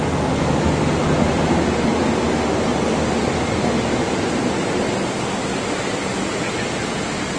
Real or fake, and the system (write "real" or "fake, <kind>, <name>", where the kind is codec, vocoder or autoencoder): real